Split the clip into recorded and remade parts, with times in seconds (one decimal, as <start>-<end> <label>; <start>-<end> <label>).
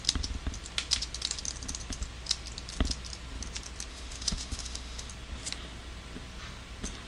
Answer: 0.0-3.9 recorded; 3.9-5.1 remade; 5.1-7.1 recorded